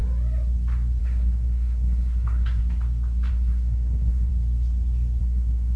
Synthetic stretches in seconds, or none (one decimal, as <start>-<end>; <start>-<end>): 1.0-2.6; 3.3-4.3; 5.2-5.8